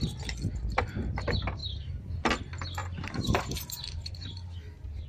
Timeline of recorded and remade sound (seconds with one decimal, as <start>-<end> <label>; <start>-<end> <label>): 0.0-2.8 recorded; 2.8-4.6 remade; 4.6-5.1 recorded